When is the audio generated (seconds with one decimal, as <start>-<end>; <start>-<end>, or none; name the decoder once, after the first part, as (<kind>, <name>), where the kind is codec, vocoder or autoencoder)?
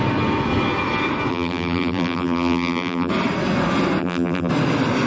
1.3-3.1 (vocoder, BigVGAN v2); 4.0-4.5